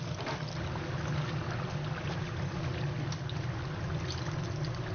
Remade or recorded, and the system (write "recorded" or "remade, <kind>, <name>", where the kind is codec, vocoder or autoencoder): recorded